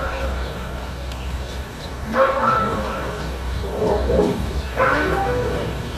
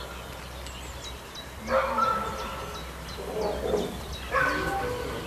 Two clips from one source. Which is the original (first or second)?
second